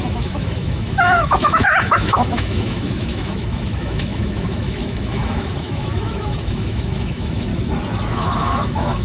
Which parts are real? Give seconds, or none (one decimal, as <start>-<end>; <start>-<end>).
7.5-8.1